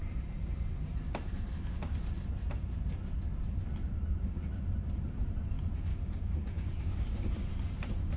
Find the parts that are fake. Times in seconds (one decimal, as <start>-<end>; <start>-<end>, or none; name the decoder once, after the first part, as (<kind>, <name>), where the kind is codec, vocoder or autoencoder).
5.9-7.5 (codec, DAC)